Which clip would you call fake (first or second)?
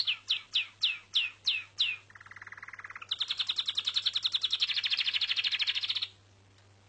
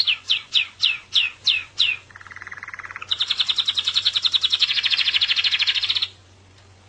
second